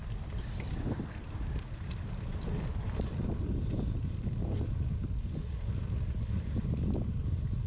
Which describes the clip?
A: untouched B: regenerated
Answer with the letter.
B